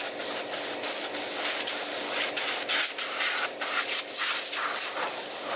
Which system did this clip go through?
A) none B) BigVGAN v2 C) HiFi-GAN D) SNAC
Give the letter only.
A